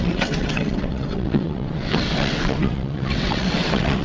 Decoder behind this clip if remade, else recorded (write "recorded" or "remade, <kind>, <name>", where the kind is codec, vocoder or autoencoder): remade, vocoder, WaveNeXt